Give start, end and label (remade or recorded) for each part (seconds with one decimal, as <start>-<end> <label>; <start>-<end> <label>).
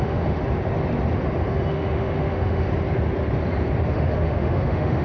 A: 0.0-0.4 remade; 0.4-1.7 recorded; 1.7-2.7 remade; 2.7-3.9 recorded; 3.9-5.0 remade